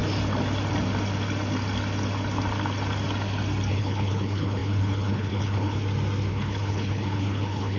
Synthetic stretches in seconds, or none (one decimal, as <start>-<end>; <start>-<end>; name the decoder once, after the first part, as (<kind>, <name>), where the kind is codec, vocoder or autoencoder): 3.7-5.8 (codec, HILCodec); 6.3-7.8